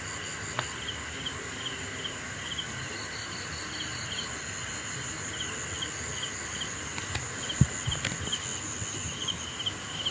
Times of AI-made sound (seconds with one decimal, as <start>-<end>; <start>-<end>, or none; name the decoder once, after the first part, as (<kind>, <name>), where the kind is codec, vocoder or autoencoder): none